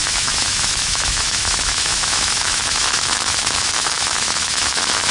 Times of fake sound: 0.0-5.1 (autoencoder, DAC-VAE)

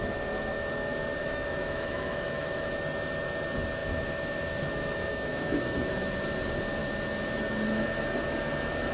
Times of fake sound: 1.2-2.7 (autoencoder, DAC-VAE); 5.1-6.1

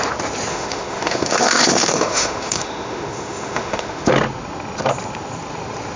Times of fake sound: 0.5-4.1 (autoencoder, DAC-VAE)